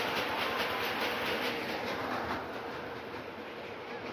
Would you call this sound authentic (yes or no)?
yes